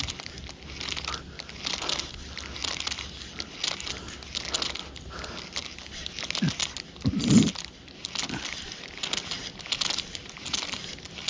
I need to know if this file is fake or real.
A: real